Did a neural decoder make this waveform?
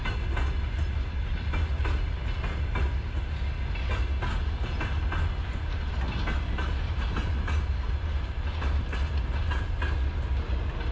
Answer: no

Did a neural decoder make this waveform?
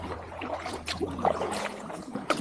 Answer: yes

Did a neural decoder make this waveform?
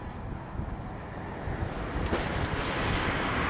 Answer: no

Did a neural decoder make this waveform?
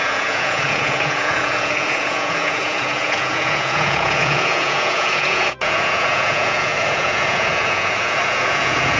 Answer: yes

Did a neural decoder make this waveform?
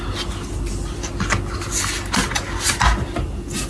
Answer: no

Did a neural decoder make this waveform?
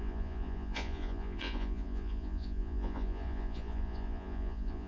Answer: yes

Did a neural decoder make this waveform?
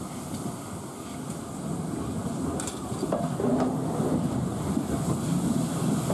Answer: no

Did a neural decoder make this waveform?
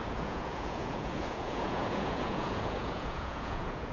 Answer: yes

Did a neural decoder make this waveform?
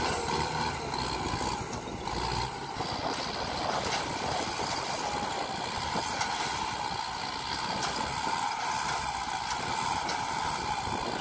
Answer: no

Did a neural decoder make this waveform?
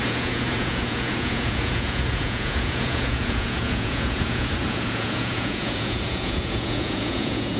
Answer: yes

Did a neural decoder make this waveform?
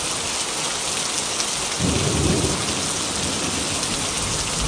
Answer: no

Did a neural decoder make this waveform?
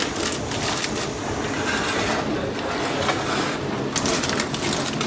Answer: no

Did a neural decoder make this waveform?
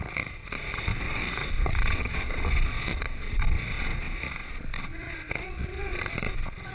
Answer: yes